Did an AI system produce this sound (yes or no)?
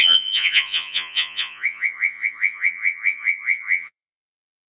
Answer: yes